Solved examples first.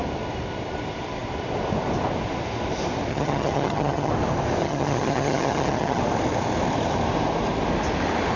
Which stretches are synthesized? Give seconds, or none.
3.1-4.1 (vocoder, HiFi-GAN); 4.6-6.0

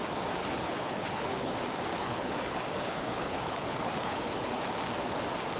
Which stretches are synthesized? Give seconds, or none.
0.4-1.5 (codec, HILCodec); 1.9-4.7

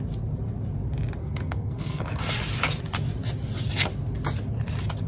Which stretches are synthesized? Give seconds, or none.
1.2-2.2 (codec, SNAC)

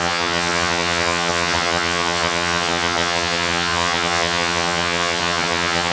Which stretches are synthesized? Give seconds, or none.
0.0-5.9 (vocoder, HiFi-GAN)

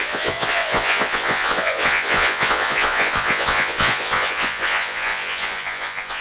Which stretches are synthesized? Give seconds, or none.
0.0-6.2 (vocoder, Vocos)

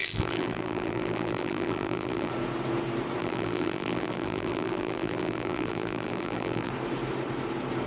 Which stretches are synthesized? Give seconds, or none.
0.0-2.3 (vocoder, BigVGAN v2); 3.2-6.7